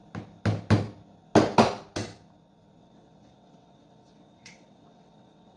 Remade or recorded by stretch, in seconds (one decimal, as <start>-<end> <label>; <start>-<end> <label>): 0.0-2.8 recorded; 2.8-5.6 remade